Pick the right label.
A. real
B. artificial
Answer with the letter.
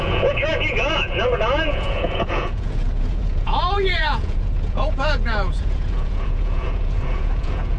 B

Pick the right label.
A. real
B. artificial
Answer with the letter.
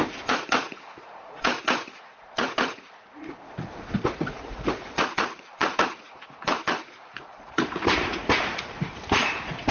B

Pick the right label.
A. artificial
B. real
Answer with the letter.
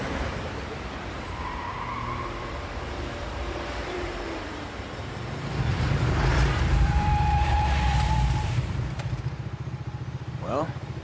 A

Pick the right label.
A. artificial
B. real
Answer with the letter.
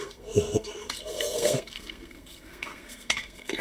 A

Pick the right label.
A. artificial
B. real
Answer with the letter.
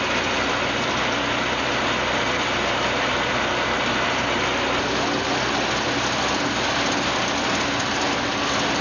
B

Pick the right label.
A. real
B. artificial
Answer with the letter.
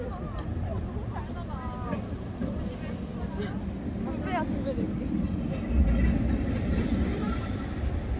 A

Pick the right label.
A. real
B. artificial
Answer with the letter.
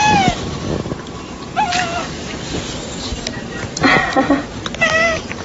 A